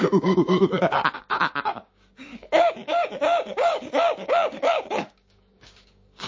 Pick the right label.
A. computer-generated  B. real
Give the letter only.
A